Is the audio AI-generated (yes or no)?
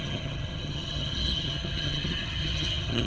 yes